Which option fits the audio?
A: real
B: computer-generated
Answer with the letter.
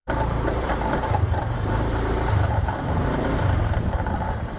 B